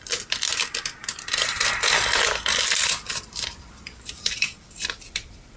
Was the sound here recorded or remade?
remade